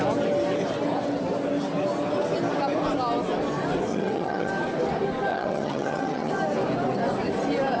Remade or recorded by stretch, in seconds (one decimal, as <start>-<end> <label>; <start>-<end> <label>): 0.0-3.9 recorded; 3.9-4.5 remade; 4.5-5.3 recorded; 5.3-6.3 remade; 6.3-7.8 recorded